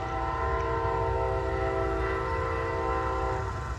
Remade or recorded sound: recorded